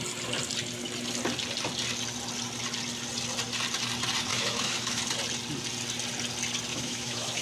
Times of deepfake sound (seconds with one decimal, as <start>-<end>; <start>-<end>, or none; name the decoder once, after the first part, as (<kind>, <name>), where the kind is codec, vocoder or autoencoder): 4.3-5.0 (autoencoder, DAC-VAE); 6.7-7.4